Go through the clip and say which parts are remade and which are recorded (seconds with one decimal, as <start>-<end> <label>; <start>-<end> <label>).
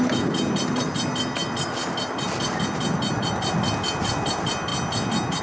0.0-5.4 recorded